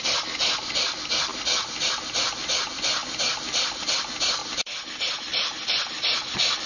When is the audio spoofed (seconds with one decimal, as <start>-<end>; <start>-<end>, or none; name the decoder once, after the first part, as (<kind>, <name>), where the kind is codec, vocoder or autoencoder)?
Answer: none